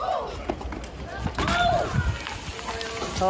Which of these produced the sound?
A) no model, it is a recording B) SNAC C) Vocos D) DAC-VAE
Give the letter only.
A